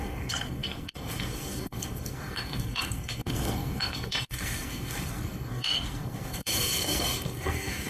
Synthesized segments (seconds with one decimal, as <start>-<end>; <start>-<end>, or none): 0.0-7.9